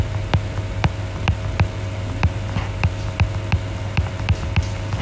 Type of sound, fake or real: real